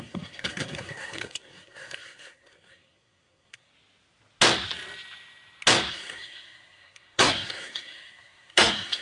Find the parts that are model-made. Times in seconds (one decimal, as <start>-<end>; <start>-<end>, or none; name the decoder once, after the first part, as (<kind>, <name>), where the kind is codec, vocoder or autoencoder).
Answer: 0.0-3.7 (codec, SNAC); 5.9-9.0

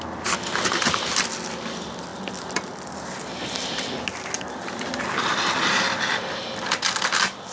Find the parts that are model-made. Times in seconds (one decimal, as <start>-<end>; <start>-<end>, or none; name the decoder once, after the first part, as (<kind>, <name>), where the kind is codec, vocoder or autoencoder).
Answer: none